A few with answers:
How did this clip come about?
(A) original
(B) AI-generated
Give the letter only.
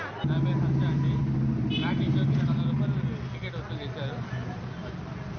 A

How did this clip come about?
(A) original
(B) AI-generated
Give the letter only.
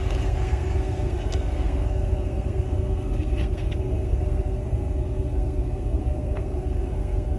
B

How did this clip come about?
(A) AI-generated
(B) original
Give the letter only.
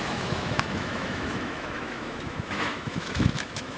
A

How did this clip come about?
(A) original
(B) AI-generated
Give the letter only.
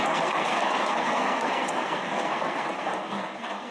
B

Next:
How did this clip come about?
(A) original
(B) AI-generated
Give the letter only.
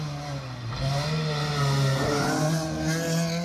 A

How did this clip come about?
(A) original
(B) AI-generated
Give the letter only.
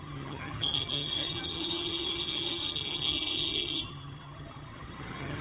B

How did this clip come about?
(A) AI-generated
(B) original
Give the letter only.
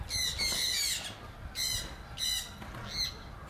B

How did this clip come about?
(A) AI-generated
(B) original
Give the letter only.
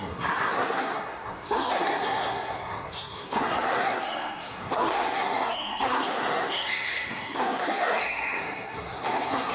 A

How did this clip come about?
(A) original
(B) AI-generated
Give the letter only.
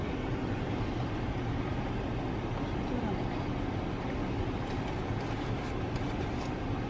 A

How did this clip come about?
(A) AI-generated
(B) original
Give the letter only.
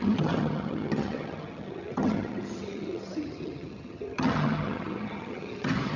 A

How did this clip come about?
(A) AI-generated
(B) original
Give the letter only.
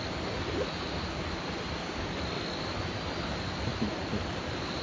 B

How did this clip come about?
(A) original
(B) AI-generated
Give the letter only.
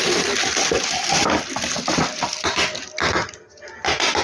A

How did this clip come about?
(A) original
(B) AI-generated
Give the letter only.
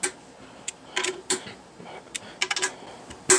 A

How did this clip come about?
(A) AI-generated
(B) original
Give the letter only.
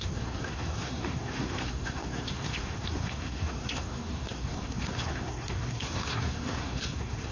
A